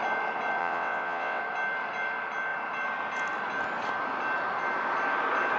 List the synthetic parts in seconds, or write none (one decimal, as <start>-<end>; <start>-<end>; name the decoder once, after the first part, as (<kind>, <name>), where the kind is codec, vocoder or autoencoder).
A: 0.6-1.4 (vocoder, WaveNeXt)